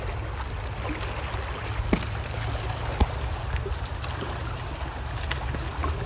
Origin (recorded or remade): recorded